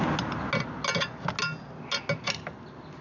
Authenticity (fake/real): real